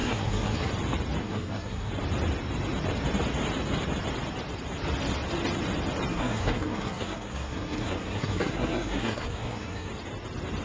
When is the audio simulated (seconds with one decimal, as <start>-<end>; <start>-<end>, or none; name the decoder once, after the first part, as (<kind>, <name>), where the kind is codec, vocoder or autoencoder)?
0.0-0.7 (codec, SNAC); 1.2-1.9; 6.1-9.9